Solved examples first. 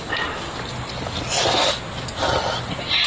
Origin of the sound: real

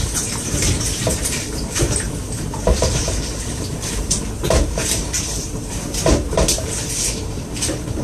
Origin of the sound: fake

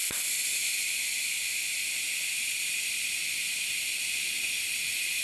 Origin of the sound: real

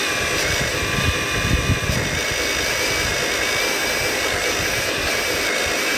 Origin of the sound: real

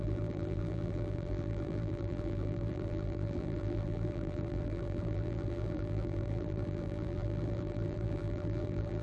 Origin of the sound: fake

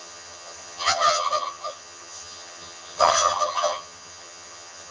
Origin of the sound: fake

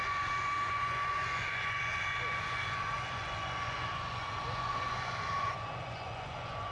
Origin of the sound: fake